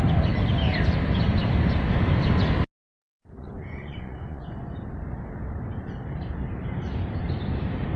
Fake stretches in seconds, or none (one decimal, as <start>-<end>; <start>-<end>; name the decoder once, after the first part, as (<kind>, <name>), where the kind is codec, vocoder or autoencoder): 3.4-4.7 (vocoder, Vocos)